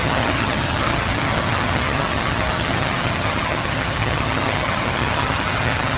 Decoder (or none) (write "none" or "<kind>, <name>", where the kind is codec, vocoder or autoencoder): vocoder, HiFi-GAN